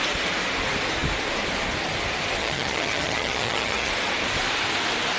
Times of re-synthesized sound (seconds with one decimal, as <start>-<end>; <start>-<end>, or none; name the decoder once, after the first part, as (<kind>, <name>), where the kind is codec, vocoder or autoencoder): 2.4-3.9 (vocoder, HiFi-GAN)